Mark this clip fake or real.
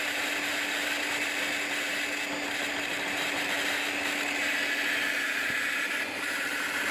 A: fake